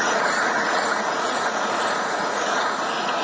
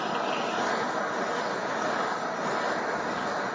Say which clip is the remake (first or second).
first